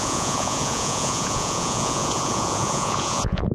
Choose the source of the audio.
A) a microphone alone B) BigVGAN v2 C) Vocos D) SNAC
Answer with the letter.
C